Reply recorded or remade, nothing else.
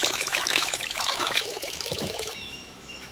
remade